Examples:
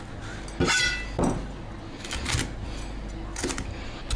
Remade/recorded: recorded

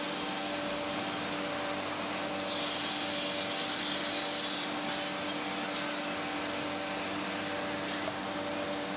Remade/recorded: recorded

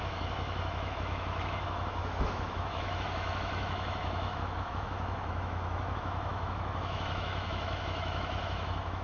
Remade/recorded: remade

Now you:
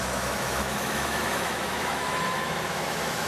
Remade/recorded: remade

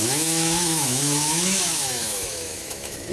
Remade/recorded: remade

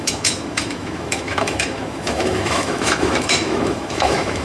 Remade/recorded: remade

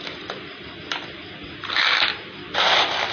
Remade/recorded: recorded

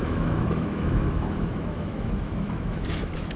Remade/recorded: remade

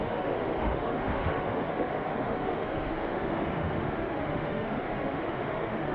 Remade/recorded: remade